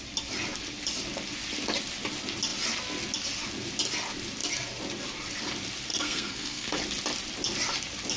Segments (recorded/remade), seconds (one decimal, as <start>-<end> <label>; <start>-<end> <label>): 0.0-5.9 recorded; 5.9-6.8 remade; 6.8-8.2 recorded